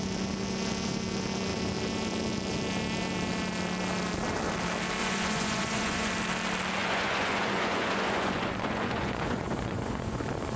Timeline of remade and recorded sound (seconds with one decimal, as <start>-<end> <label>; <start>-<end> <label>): 0.0-5.0 recorded; 5.0-6.1 remade; 6.1-6.8 recorded; 6.8-10.2 remade; 10.2-10.6 recorded